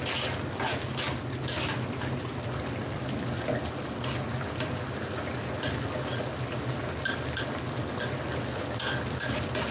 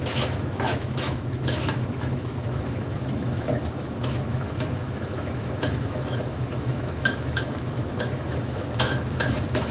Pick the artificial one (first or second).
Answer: second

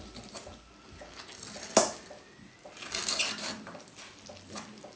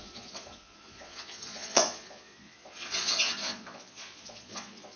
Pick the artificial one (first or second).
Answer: second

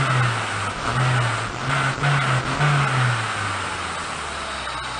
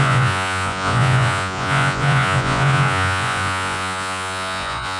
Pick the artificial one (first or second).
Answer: second